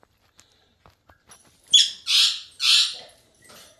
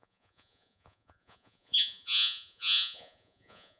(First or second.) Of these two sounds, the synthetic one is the second